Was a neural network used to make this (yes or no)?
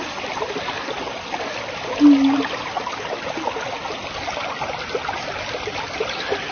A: no